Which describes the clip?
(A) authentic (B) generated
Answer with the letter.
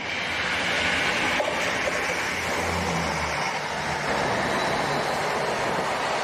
A